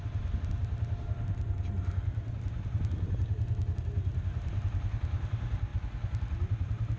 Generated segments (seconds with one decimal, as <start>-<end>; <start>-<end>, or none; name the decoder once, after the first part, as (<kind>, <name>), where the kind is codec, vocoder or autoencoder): none